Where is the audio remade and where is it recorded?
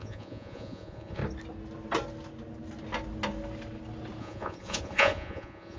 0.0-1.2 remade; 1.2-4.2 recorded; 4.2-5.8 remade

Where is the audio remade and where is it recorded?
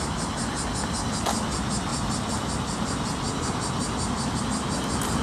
0.0-5.2 recorded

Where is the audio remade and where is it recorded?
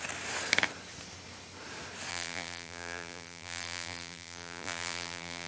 0.0-2.1 recorded; 2.1-5.5 remade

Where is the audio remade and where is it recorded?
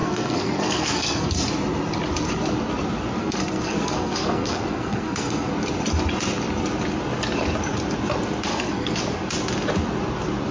0.0-1.3 remade; 1.3-3.2 recorded; 3.2-5.5 remade; 5.5-8.5 recorded; 8.5-9.0 remade; 9.0-10.5 recorded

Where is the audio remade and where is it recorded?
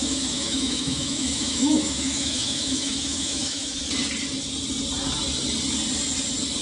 0.0-3.8 remade; 3.8-6.6 recorded